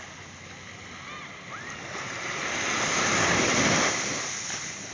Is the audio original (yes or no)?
yes